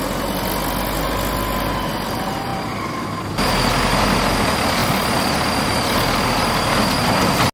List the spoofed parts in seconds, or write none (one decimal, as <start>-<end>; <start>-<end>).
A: none